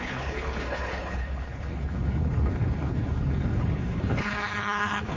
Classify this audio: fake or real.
fake